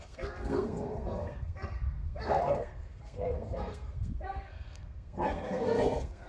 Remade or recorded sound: remade